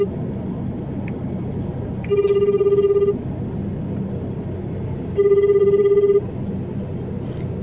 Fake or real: fake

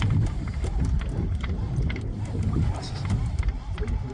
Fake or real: real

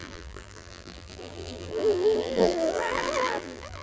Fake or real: fake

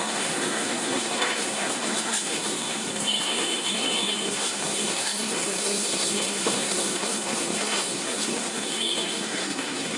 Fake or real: fake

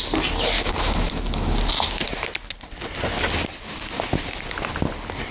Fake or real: real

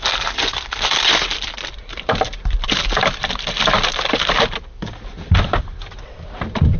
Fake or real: fake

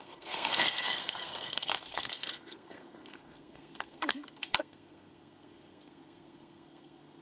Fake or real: fake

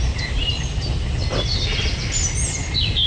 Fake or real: real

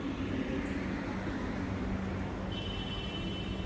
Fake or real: real